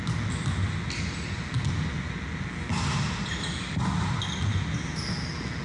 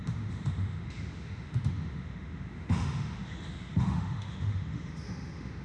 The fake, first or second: second